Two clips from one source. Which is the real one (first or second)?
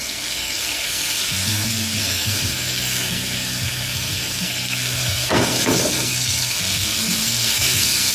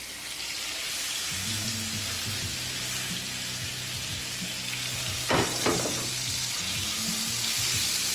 second